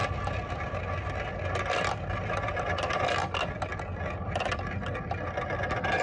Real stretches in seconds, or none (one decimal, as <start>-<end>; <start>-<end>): 0.0-6.0